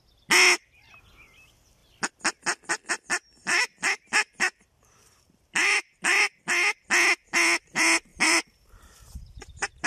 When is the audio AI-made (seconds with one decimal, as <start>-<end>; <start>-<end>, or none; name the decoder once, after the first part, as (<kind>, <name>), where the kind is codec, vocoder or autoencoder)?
3.4-6.4 (vocoder, BigVGAN v2); 8.1-9.9